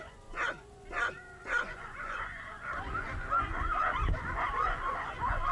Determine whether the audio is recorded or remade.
remade